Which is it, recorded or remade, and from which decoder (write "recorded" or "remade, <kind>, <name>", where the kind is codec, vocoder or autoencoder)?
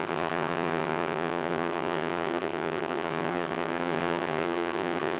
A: remade, vocoder, HiFi-GAN